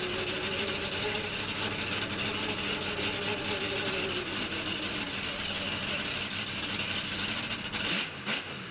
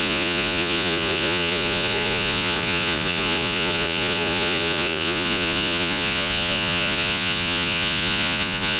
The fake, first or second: second